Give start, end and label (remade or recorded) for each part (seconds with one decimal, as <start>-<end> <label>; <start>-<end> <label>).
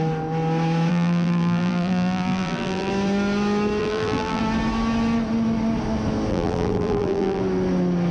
0.0-0.9 recorded; 0.9-2.9 remade; 2.9-3.8 recorded; 3.8-4.4 remade; 4.4-6.3 recorded; 6.3-7.4 remade; 7.4-8.1 recorded